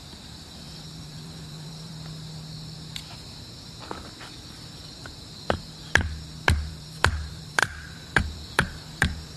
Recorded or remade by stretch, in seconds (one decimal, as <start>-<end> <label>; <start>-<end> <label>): 0.0-1.9 remade; 1.9-6.7 recorded; 6.7-9.4 remade